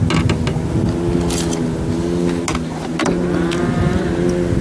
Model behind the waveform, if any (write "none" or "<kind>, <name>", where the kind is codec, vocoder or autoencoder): none